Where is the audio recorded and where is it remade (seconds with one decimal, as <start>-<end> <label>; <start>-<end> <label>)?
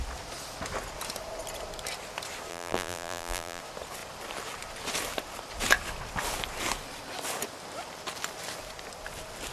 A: 0.0-2.5 recorded; 2.5-3.6 remade; 3.6-9.5 recorded